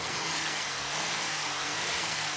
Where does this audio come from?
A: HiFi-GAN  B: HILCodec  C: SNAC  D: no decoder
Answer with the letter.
C